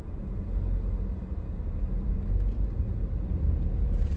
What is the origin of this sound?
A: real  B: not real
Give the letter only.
A